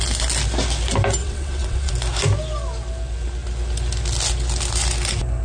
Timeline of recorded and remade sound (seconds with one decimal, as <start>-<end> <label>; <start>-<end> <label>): 0.0-1.2 recorded; 1.2-1.9 remade; 1.9-5.4 recorded